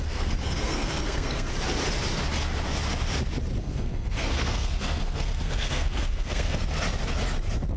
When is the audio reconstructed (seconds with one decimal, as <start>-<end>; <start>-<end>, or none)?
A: 0.0-1.5; 3.6-6.6